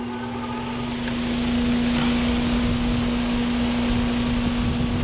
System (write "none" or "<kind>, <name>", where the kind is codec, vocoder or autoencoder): none